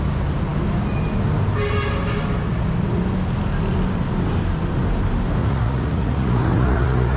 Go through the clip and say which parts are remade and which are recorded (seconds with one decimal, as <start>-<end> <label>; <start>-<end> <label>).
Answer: 0.0-5.4 recorded; 5.4-7.2 remade

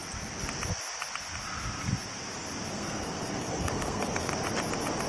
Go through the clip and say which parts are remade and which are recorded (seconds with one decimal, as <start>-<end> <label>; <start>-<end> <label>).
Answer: 0.0-2.7 recorded; 2.7-4.3 remade; 4.3-5.1 recorded

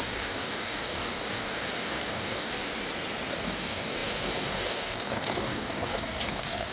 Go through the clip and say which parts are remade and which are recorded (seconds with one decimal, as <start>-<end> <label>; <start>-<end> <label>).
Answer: 0.0-2.7 remade; 2.7-3.3 recorded; 3.3-6.7 remade

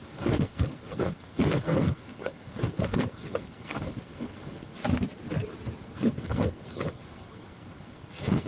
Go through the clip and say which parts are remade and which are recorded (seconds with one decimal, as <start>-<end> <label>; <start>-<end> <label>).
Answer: 0.0-4.8 remade; 4.8-5.8 recorded; 5.8-8.5 remade

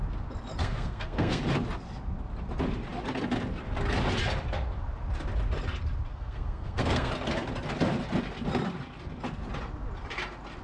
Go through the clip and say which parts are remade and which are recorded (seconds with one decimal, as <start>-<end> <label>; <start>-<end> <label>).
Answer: 0.0-0.6 recorded; 0.6-1.4 remade; 1.4-6.1 recorded; 6.1-7.1 remade; 7.1-10.6 recorded

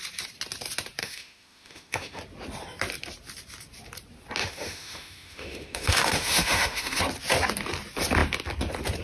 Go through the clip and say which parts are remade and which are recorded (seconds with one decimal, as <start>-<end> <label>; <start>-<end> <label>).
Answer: 0.0-1.0 recorded; 1.0-2.2 remade; 2.2-4.4 recorded; 4.4-7.0 remade; 7.0-9.0 recorded